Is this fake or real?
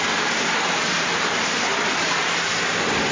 real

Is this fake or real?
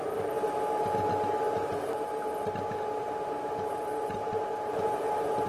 real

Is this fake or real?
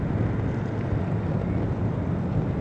real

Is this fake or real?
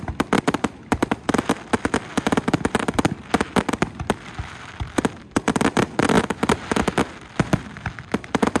real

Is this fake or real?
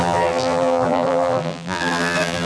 fake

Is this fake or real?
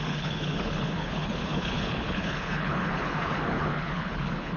fake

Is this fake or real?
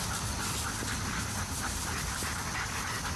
real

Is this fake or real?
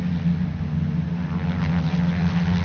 real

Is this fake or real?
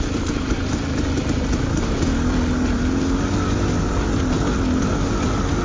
real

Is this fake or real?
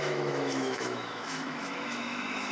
fake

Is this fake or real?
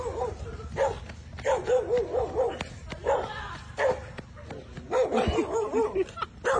real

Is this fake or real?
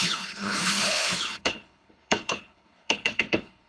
fake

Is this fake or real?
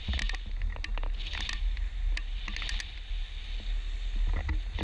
real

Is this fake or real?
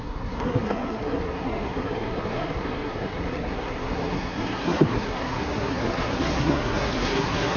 fake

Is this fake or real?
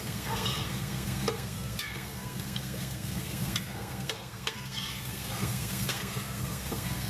fake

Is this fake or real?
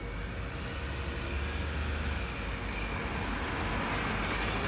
real